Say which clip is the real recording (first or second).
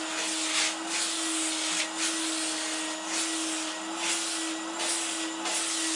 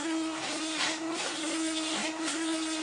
first